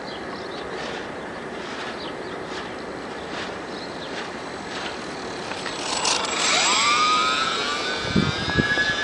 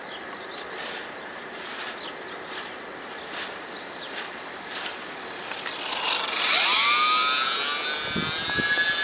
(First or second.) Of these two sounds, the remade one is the first